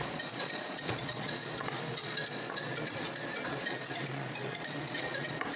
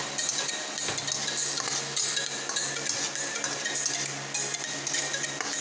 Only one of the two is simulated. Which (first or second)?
first